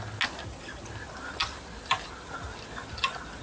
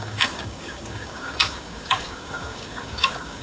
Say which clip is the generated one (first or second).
second